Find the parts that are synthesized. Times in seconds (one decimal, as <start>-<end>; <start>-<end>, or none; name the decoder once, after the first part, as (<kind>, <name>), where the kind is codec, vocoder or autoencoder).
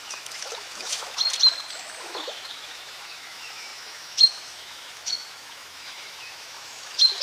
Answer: 0.0-1.2 (autoencoder, DAC-VAE); 1.8-7.2